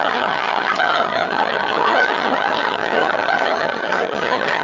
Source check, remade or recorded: remade